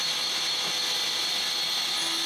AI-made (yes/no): no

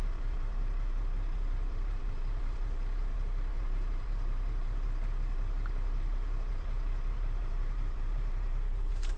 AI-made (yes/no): yes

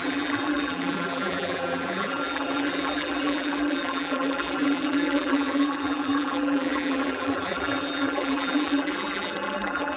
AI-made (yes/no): yes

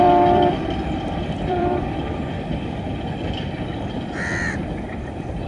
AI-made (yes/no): yes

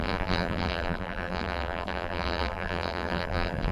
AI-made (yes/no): yes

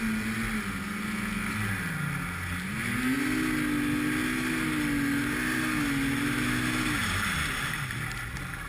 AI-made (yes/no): no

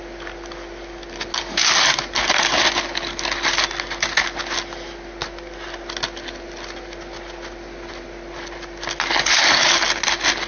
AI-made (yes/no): no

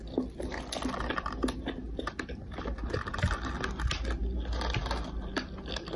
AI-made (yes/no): no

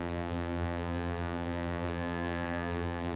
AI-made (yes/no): yes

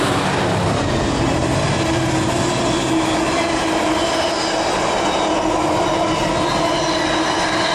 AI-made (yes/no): no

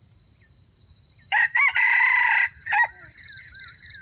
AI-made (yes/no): yes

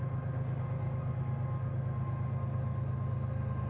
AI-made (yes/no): no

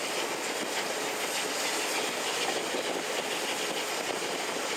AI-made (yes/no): no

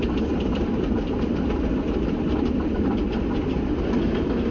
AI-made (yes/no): no